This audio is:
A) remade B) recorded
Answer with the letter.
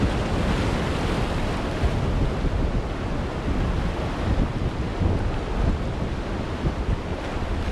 B